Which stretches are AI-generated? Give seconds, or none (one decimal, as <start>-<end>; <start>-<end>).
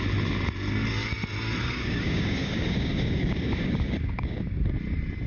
1.6-4.6